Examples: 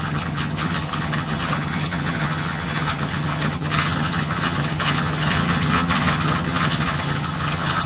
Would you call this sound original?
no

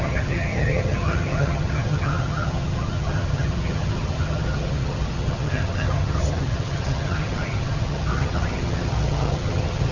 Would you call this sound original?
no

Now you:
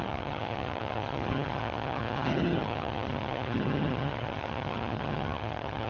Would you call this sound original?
no